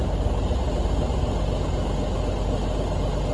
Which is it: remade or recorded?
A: recorded